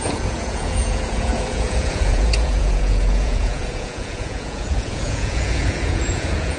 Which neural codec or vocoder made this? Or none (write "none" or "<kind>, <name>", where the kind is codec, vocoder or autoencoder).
vocoder, Vocos